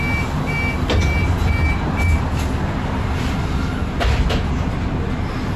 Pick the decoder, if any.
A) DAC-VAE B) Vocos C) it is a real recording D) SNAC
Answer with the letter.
C